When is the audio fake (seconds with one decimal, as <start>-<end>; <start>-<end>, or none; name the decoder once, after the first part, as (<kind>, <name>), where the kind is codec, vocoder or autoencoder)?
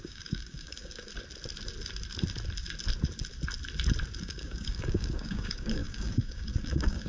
0.0-1.1 (codec, DAC); 4.2-7.1